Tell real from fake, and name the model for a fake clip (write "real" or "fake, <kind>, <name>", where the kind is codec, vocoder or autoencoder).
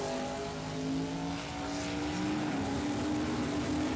real